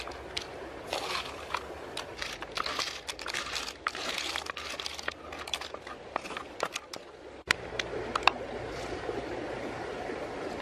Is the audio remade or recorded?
recorded